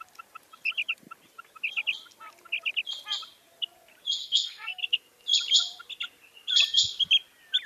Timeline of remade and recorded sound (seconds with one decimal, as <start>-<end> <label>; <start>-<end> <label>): 0.0-4.2 recorded; 4.2-4.8 remade; 4.8-7.7 recorded